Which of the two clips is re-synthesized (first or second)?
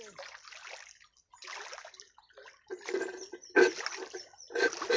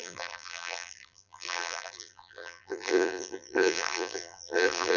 second